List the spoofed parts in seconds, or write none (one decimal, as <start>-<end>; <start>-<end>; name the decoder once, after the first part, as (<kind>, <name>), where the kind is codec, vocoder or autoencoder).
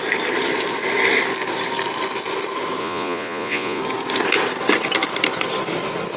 2.8-3.8 (vocoder, Vocos)